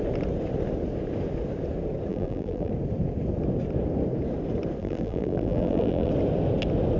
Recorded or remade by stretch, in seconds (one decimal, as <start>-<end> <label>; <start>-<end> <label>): 0.0-2.1 recorded; 2.1-2.7 remade; 2.7-4.8 recorded; 4.8-6.1 remade; 6.1-7.0 recorded